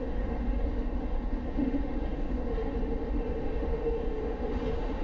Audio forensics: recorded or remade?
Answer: remade